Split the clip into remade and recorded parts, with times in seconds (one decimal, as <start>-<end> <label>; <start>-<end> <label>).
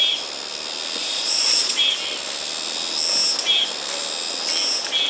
0.0-1.0 recorded; 1.0-1.8 remade; 1.8-5.1 recorded